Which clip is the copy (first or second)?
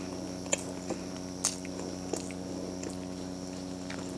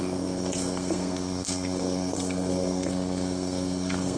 second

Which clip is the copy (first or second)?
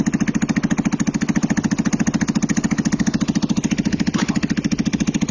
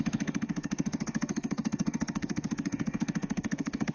second